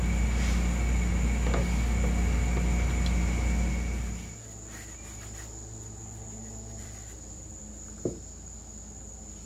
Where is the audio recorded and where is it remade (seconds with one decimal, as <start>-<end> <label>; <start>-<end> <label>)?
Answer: 0.0-6.8 recorded; 6.8-7.6 remade; 7.6-9.5 recorded